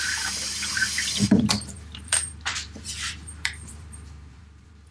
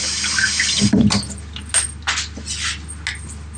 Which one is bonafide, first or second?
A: second